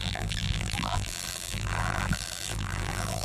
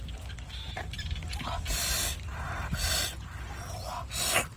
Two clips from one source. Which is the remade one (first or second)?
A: first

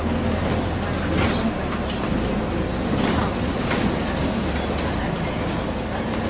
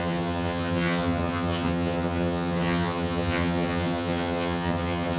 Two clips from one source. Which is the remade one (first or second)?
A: second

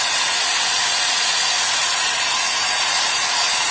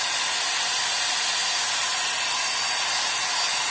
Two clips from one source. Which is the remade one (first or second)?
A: first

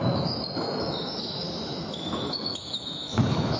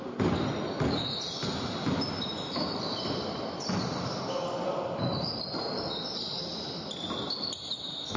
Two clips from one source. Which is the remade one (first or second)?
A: first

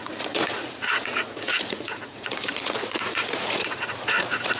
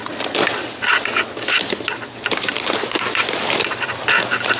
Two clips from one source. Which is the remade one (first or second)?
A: first